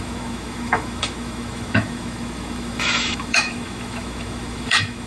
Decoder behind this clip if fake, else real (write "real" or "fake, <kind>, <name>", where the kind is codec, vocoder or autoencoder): fake, autoencoder, DAC-VAE